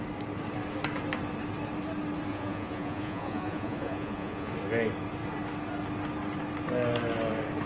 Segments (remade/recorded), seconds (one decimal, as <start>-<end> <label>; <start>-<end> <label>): 0.0-2.3 recorded; 2.3-4.5 remade; 4.5-7.7 recorded